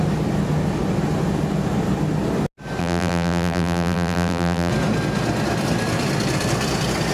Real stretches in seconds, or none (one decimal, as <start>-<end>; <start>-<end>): 0.0-2.8; 4.7-7.1